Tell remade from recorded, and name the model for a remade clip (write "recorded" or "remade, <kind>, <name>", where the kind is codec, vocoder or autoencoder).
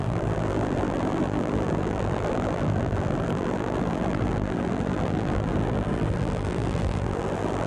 remade, vocoder, BigVGAN v2